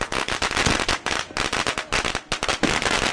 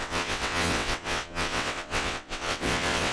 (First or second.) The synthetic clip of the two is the second